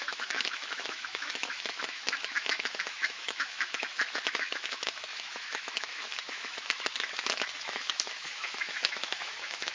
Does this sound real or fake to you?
fake